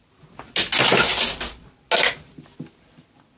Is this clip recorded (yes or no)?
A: yes